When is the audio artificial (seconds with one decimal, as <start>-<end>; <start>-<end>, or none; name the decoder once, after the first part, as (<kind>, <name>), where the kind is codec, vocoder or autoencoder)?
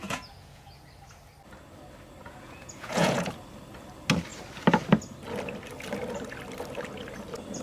0.0-0.9 (vocoder, Vocos); 2.2-3.3